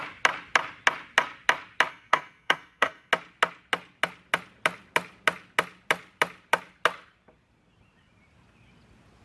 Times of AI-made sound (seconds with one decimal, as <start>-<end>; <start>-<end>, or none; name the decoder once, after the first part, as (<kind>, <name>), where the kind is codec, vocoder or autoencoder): 1.9-3.1 (codec, SNAC)